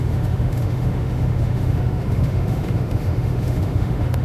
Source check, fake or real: fake